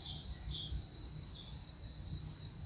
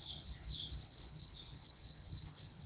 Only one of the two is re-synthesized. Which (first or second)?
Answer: second